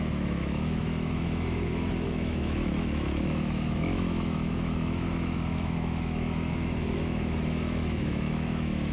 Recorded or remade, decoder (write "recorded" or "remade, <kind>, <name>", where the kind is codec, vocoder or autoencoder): remade, autoencoder, DAC-VAE